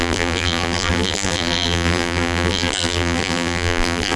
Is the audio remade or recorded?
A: remade